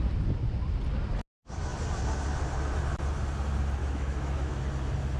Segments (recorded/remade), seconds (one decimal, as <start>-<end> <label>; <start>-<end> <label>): 0.0-3.8 recorded; 3.8-4.6 remade; 4.6-5.2 recorded